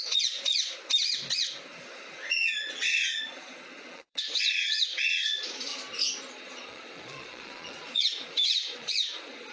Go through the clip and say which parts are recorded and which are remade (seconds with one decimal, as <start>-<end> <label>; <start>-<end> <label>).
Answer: 0.0-0.8 remade; 0.8-1.7 recorded; 1.7-5.7 remade; 5.7-6.3 recorded; 6.3-9.5 remade